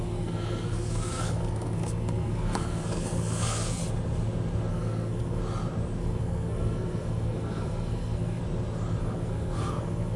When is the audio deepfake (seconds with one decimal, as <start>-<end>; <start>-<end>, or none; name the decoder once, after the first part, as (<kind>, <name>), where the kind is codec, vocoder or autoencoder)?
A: 0.0-3.8 (codec, SNAC); 4.7-5.4; 6.0-8.4; 9.0-10.2